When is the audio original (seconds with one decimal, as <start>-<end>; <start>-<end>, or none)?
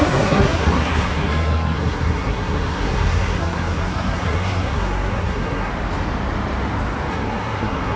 5.7-7.1